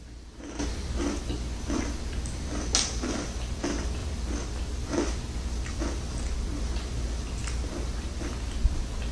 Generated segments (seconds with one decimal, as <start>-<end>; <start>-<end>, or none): 4.0-5.8